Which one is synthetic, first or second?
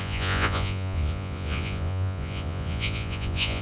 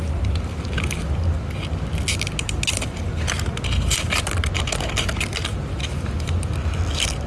first